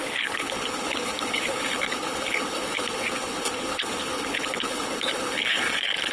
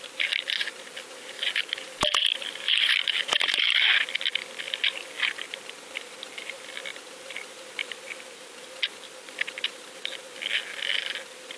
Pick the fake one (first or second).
first